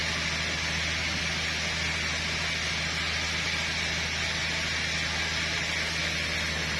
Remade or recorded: recorded